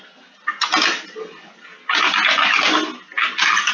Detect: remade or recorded recorded